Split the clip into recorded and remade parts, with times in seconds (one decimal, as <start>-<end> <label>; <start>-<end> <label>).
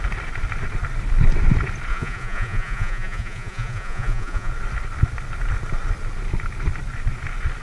0.0-1.9 recorded; 1.9-4.5 remade; 4.5-7.6 recorded